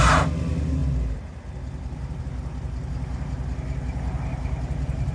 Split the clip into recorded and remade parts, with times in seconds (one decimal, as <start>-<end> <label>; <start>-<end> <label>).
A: 0.0-5.1 recorded